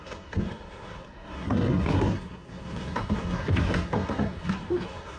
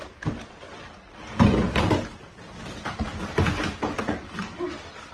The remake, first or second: first